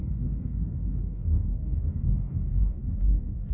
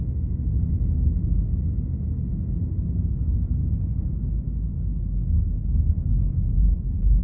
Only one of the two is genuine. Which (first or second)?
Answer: second